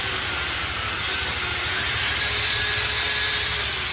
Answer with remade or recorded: recorded